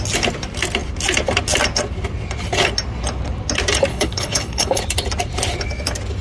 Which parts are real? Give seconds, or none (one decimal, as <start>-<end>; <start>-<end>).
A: 0.0-3.9; 4.8-6.2

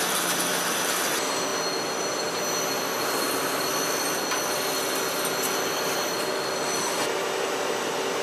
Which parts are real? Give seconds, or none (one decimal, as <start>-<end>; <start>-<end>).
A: 0.0-8.2